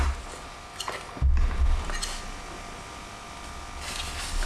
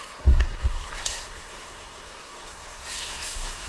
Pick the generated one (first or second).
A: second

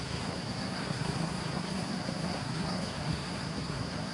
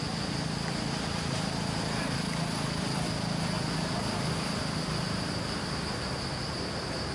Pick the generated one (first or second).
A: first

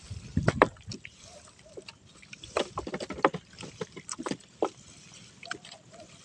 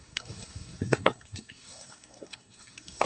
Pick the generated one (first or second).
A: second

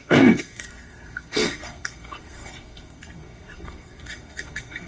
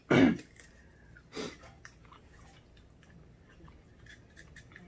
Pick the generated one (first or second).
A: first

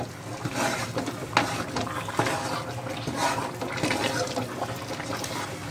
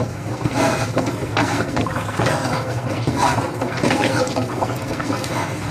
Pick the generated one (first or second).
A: second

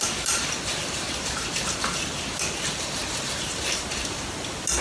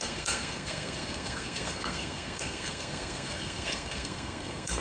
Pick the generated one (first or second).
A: second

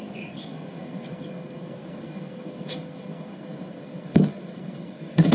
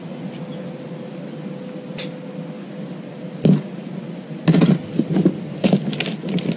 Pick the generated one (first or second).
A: first